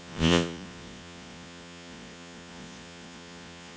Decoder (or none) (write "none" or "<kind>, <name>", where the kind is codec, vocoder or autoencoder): vocoder, Vocos